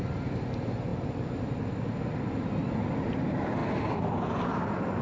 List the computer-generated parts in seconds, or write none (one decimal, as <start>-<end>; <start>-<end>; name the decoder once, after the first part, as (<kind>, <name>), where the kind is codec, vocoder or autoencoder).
none